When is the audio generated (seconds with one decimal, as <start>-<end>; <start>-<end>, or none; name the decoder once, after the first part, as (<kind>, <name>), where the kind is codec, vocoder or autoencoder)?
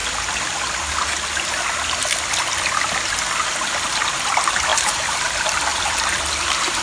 4.7-5.2 (vocoder, BigVGAN v2); 5.7-6.8